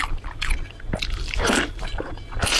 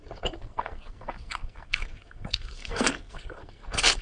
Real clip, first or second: first